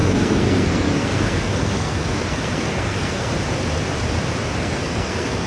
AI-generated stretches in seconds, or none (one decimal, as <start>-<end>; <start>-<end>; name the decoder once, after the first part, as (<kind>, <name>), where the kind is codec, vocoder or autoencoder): 0.0-3.3 (codec, SNAC); 4.6-5.5